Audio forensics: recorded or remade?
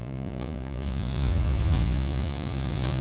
remade